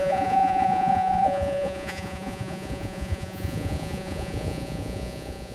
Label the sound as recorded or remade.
remade